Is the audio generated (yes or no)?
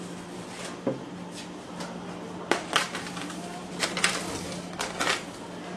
no